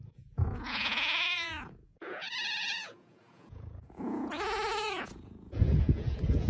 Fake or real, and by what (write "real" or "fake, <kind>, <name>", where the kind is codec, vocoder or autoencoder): fake, vocoder, Vocos